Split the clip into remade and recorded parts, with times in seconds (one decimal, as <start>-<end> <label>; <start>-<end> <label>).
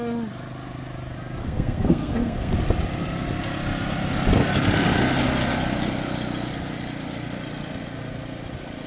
0.0-1.4 recorded; 1.4-2.5 remade; 2.5-8.9 recorded